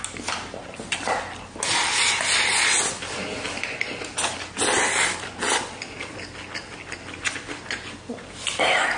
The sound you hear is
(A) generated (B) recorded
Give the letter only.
B